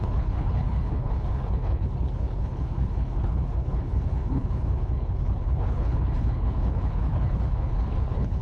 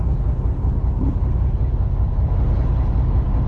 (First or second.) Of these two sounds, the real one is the second